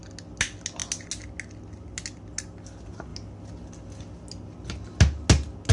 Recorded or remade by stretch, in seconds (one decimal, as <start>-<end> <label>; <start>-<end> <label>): 0.0-5.7 recorded